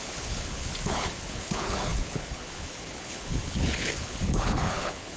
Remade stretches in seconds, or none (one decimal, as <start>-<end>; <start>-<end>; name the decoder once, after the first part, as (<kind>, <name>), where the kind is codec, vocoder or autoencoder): 0.0-5.2 (codec, HILCodec)